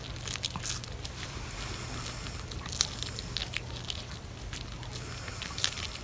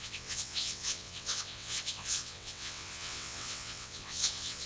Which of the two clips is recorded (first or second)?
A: first